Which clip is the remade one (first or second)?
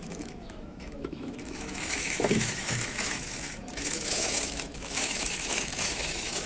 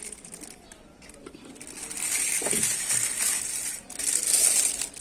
first